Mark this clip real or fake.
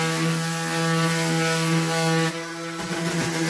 real